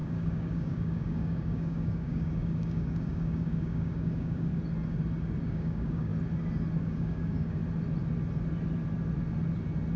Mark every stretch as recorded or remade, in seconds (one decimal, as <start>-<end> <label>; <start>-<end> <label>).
0.0-4.5 remade; 4.5-5.4 recorded; 5.4-6.1 remade; 6.1-6.8 recorded; 6.8-7.6 remade; 7.6-10.0 recorded